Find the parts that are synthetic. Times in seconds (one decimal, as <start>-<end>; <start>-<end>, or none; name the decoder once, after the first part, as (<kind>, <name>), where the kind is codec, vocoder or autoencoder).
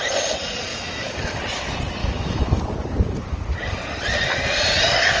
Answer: 0.7-1.4 (autoencoder, DAC-VAE); 2.0-2.6